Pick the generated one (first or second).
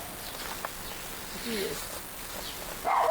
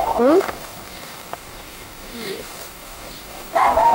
second